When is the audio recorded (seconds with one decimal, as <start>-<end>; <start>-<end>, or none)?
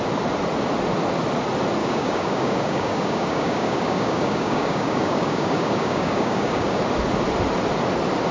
0.0-1.8; 6.8-8.3